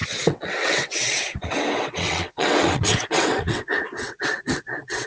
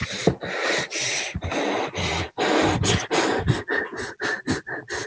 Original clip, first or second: second